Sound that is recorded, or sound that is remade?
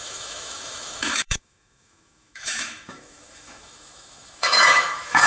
remade